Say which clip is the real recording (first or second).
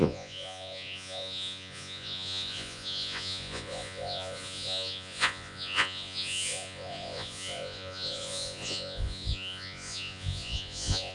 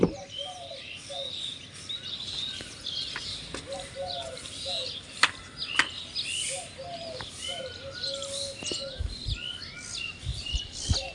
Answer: second